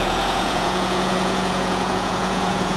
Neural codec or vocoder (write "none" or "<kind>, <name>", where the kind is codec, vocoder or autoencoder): vocoder, Vocos